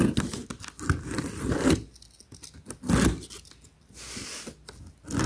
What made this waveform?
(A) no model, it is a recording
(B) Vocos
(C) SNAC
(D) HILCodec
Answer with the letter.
A